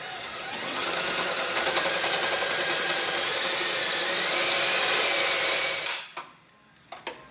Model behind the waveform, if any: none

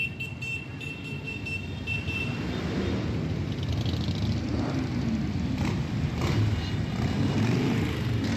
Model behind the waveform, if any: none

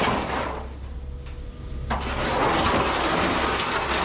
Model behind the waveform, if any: none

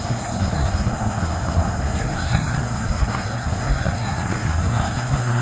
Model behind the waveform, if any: codec, SNAC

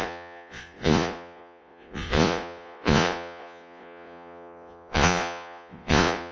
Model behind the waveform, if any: vocoder, Vocos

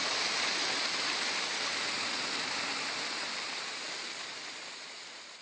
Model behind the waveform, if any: vocoder, BigVGAN v2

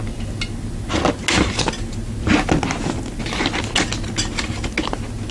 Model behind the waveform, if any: none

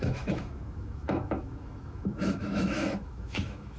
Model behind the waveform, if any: autoencoder, DAC-VAE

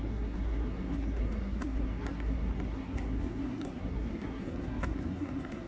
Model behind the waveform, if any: codec, SNAC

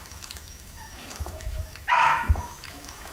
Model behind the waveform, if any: autoencoder, DAC-VAE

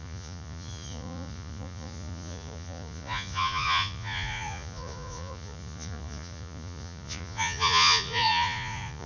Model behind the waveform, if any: vocoder, Vocos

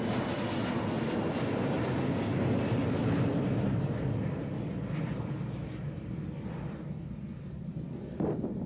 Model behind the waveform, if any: none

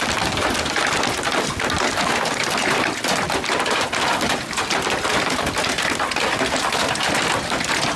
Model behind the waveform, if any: none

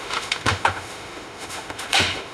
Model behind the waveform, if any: autoencoder, DAC-VAE